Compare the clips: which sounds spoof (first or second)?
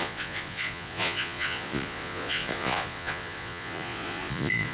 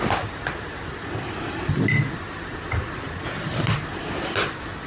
first